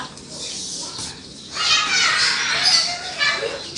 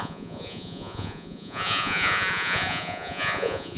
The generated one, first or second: second